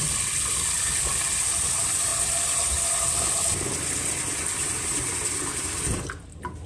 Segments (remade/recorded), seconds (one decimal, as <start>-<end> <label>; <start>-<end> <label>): 0.0-6.7 recorded